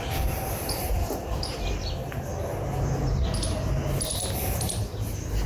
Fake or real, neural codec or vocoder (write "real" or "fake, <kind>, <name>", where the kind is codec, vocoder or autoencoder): real